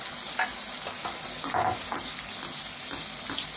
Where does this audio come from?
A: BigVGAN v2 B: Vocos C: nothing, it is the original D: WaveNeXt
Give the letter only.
C